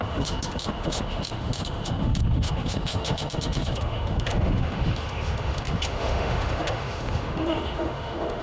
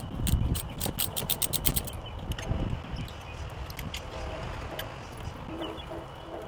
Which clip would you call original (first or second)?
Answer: second